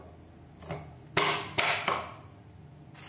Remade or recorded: recorded